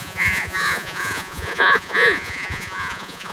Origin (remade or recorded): remade